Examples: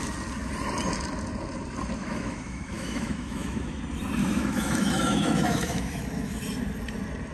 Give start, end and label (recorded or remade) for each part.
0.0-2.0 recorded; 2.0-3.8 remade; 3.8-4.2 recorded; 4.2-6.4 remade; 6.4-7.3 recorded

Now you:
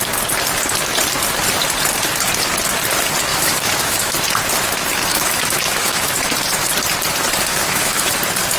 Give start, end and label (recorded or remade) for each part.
0.0-3.3 recorded; 3.3-4.1 remade; 4.1-5.1 recorded; 5.1-6.1 remade; 6.1-7.5 recorded; 7.5-8.1 remade; 8.1-8.6 recorded